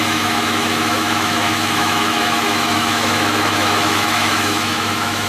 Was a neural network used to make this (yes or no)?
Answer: yes